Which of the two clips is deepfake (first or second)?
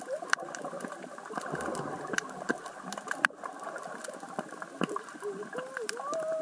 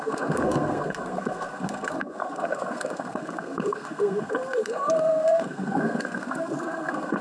second